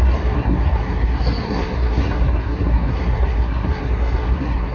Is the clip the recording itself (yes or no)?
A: no